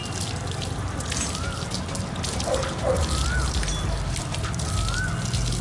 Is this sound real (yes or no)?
yes